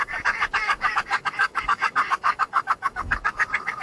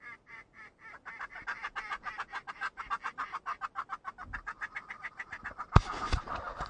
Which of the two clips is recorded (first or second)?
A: second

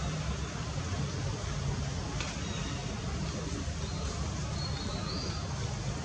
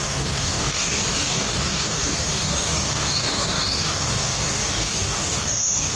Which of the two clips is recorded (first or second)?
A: first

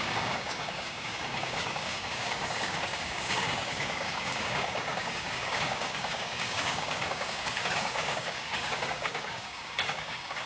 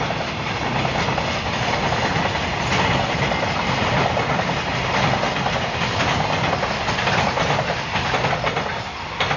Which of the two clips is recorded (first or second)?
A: second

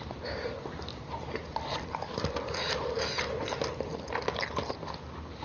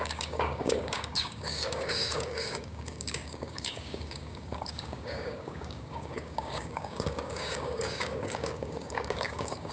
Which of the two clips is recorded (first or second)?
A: first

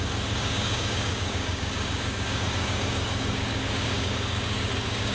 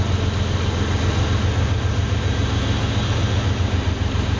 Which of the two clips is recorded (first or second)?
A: second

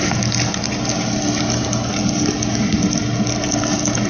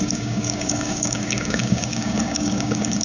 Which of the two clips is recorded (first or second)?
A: first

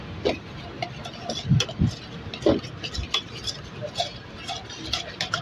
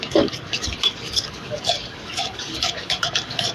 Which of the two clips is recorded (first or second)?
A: first